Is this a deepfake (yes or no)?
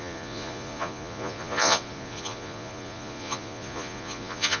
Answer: yes